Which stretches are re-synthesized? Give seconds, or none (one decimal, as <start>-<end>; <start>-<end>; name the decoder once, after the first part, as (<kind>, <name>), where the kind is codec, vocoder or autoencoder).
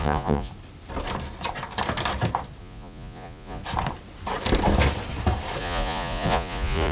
0.0-0.5 (vocoder, Vocos); 2.6-3.6; 5.6-6.9